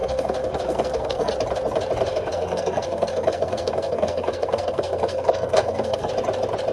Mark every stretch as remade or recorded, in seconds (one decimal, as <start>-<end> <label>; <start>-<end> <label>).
0.0-1.3 remade; 1.3-2.1 recorded; 2.1-6.1 remade; 6.1-6.7 recorded